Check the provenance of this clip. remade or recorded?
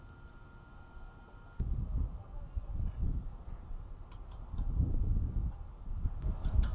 recorded